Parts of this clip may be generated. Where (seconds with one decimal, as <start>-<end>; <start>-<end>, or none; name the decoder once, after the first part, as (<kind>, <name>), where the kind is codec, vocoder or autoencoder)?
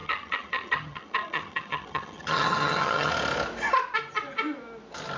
0.0-3.1 (vocoder, HiFi-GAN)